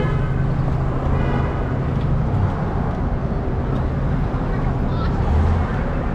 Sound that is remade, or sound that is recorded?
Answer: recorded